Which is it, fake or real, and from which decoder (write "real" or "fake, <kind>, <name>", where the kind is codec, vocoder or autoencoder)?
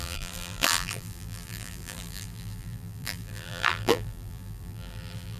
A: fake, vocoder, BigVGAN v2